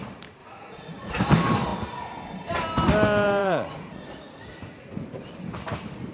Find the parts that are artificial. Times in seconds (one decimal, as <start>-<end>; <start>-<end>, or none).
0.4-1.1; 3.4-4.9